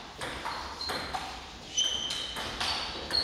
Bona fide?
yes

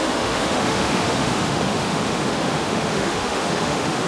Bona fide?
no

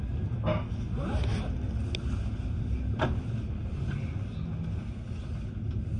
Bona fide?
yes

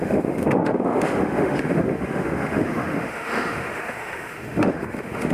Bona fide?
no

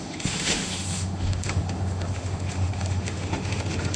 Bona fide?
no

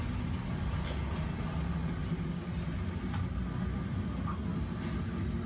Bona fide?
yes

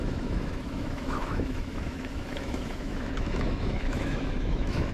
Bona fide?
no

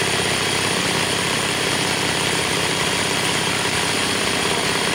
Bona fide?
yes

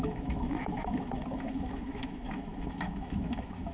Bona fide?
no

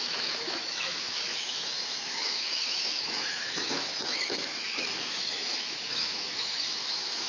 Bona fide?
no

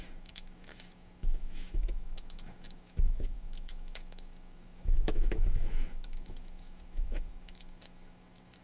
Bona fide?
no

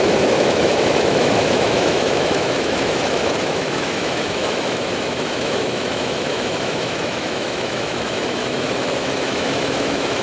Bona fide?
no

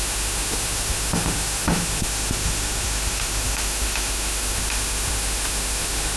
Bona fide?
no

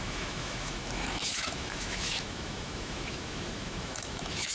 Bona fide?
no